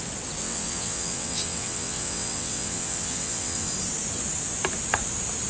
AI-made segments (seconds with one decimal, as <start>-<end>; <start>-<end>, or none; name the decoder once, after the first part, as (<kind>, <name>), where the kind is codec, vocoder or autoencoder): 0.4-3.7 (vocoder, WaveNeXt)